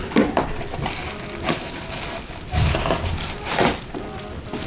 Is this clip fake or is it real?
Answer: real